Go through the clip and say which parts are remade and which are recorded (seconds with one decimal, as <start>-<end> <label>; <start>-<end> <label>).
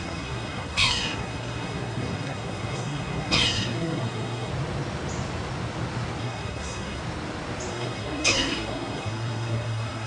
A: 0.0-4.5 remade; 4.5-6.2 recorded; 6.2-7.0 remade; 7.0-7.7 recorded; 7.7-10.1 remade